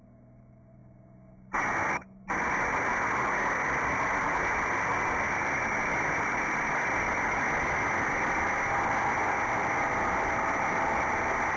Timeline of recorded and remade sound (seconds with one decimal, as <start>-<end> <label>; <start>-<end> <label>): 0.0-11.6 recorded